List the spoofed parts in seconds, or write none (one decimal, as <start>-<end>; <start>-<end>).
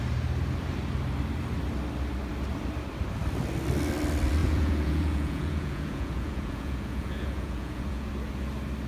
4.4-8.1